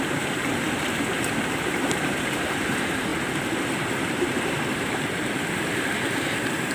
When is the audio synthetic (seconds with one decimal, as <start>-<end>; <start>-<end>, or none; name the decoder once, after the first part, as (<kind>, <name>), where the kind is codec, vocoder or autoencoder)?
0.0-3.1 (vocoder, BigVGAN v2); 4.2-6.7